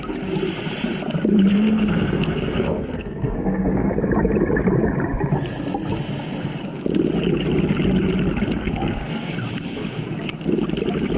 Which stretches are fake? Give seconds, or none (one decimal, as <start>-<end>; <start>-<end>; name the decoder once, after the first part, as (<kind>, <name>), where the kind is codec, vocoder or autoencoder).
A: 1.5-3.9 (codec, SNAC); 8.6-9.3